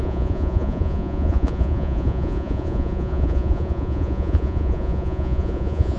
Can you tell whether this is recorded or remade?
remade